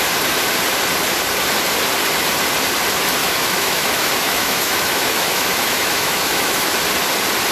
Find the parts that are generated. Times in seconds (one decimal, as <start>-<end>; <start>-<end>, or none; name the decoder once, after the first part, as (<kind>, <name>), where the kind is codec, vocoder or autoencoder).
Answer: 3.2-6.7 (autoencoder, DAC-VAE)